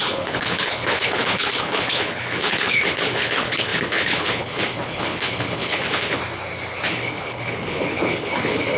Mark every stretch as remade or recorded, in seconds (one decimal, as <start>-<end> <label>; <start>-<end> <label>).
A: 0.0-6.2 remade; 6.2-6.9 recorded; 6.9-8.8 remade